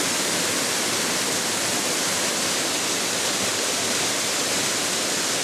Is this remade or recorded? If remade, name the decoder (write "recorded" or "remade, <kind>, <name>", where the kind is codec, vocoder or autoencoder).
recorded